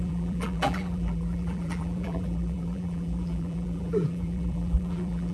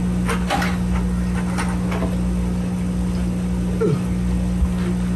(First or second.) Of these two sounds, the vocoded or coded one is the first